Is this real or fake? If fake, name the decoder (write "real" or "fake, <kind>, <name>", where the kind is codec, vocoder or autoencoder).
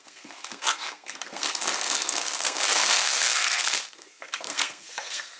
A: fake, codec, SNAC